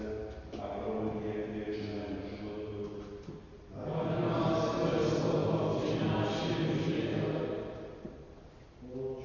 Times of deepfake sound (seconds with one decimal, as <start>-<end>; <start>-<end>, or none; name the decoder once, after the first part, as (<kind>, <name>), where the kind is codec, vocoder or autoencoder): none